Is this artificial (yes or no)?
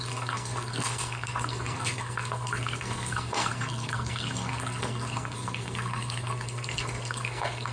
yes